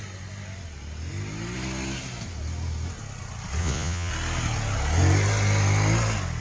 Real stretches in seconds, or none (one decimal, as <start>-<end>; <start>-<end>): 0.0-3.6; 4.1-6.4